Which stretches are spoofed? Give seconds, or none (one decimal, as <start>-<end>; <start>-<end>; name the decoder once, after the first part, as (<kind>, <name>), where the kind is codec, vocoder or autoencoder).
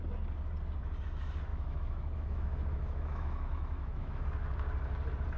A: 1.5-4.2 (autoencoder, DAC-VAE)